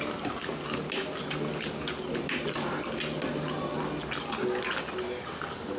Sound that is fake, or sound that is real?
real